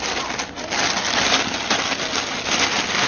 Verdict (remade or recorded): recorded